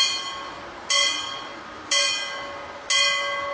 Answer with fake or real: real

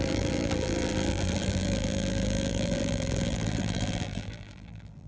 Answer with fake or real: fake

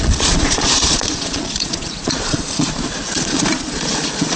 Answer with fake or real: fake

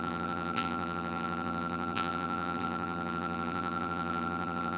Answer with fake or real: fake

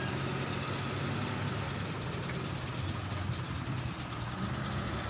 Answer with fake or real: real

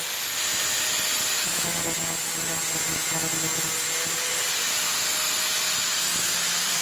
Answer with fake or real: real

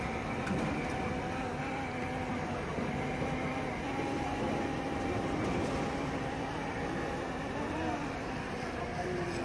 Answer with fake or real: real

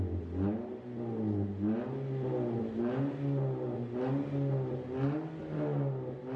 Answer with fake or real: real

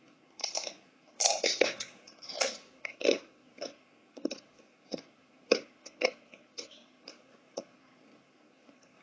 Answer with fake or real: fake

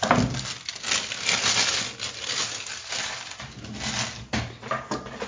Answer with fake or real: real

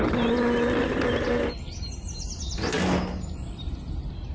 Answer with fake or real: real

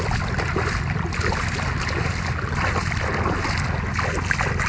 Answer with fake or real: real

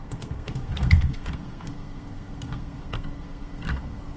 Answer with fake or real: fake